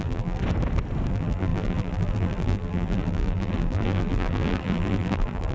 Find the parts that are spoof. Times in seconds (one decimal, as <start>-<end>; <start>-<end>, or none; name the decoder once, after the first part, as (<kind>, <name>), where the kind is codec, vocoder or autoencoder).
0.0-0.4 (vocoder, BigVGAN v2); 1.1-5.5